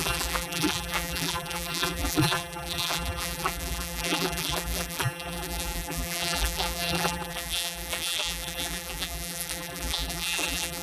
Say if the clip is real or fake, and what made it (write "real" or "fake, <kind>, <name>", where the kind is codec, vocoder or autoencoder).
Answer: fake, vocoder, BigVGAN v2